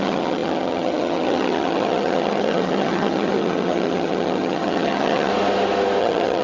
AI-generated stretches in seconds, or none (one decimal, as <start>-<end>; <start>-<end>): 0.0-5.3; 6.0-6.4